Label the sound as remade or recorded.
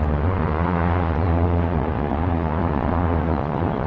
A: remade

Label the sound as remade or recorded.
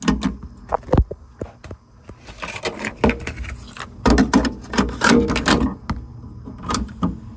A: recorded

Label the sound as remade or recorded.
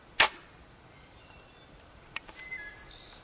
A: recorded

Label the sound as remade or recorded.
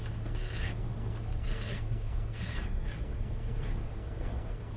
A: remade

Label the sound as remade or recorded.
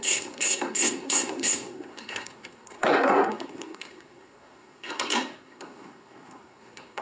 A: remade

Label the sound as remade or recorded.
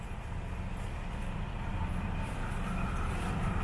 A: remade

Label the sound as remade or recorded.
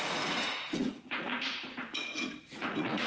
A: remade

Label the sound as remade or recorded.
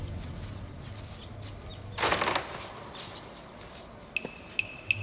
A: recorded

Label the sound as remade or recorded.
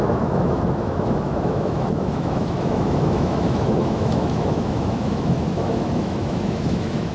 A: remade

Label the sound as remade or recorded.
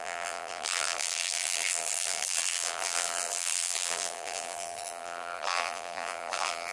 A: remade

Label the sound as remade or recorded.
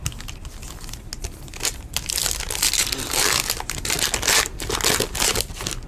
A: recorded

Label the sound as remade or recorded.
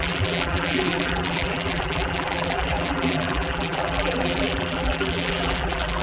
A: remade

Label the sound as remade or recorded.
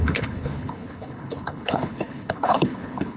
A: remade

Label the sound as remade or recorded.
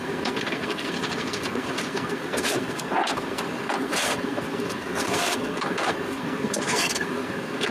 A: remade